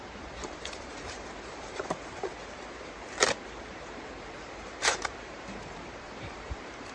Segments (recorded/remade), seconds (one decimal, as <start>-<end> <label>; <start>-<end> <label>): 0.0-2.3 remade; 2.3-3.5 recorded; 3.5-6.9 remade